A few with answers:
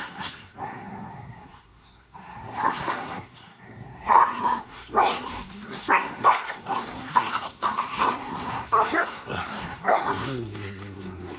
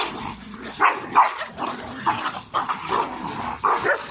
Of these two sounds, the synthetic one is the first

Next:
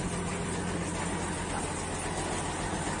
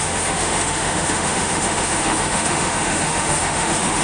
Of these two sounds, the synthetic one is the second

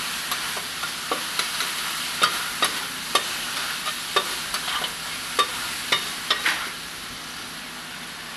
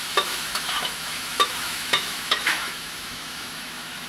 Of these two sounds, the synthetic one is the second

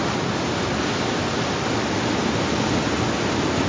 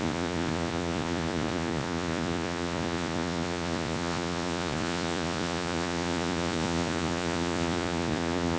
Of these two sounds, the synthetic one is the second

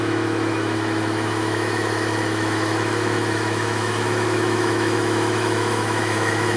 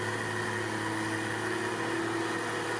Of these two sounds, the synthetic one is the first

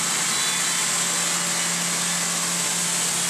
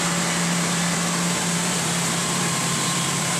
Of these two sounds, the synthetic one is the second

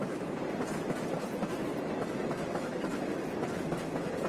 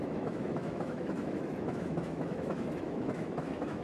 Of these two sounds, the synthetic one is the second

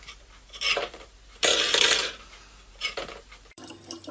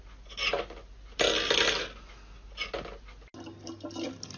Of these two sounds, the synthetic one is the first